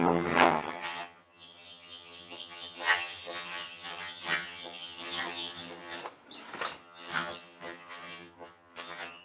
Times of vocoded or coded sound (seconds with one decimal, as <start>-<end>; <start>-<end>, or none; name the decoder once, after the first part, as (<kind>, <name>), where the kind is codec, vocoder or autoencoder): 0.0-6.0 (vocoder, HiFi-GAN); 6.8-9.2